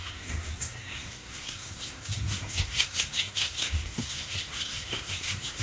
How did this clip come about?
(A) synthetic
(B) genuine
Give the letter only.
A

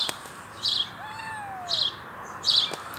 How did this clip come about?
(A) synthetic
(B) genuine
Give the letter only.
B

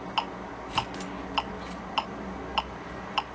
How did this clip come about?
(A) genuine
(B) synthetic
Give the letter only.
A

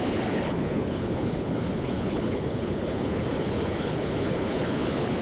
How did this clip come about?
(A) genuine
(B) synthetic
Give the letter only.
B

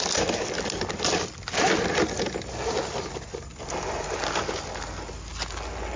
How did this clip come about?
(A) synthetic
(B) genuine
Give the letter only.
B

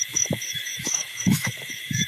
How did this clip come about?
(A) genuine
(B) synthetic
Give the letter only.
B